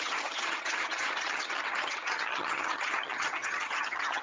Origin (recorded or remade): remade